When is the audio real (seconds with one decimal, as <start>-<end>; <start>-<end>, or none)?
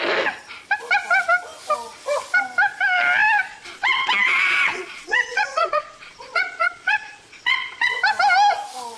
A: 0.0-3.5; 8.0-9.0